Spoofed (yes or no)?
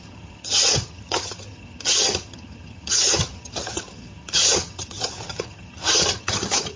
yes